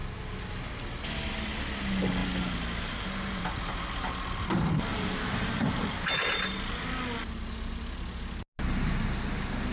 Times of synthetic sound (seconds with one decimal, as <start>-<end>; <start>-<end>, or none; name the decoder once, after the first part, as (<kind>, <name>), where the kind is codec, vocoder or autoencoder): 2.2-3.4 (vocoder, BigVGAN v2); 4.9-5.8